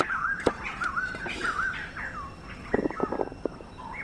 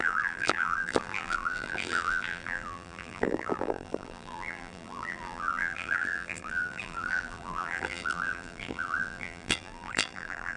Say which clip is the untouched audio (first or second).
first